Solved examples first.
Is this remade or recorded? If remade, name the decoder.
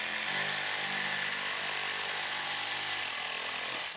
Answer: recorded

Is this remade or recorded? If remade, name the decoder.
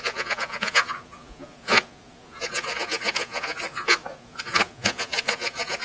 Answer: remade, vocoder, Vocos